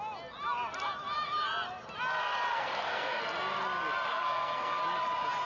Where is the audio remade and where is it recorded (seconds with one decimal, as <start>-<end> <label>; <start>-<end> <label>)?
0.0-2.5 recorded; 2.5-3.2 remade; 3.2-4.1 recorded; 4.1-4.8 remade; 4.8-5.4 recorded